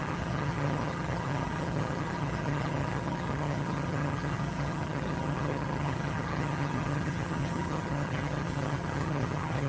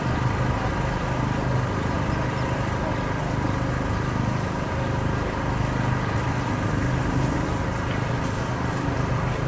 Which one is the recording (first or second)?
second